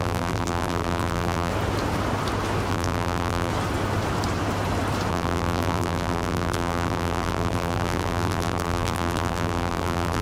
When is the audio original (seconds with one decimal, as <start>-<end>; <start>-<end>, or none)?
1.5-2.7; 3.5-5.1